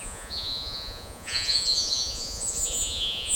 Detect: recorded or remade remade